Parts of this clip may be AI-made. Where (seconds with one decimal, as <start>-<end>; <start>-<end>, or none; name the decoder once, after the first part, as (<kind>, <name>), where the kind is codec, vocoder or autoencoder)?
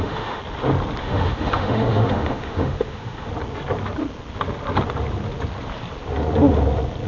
0.0-0.4 (autoencoder, DAC-VAE); 1.0-3.3